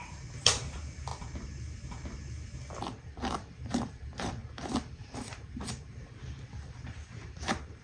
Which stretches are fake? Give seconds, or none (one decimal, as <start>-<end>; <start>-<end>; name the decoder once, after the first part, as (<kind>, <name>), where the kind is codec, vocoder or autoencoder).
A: 0.0-1.1 (vocoder, BigVGAN v2); 3.0-4.4; 5.0-7.8